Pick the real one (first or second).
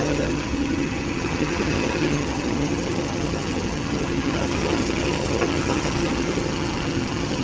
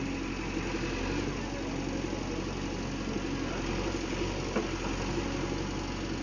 second